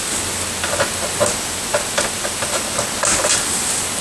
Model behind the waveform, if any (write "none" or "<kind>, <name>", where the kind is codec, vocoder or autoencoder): none